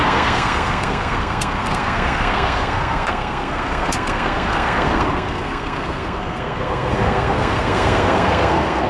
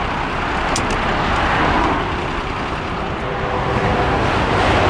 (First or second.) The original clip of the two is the second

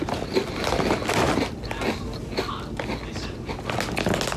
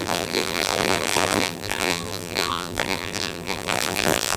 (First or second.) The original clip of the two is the first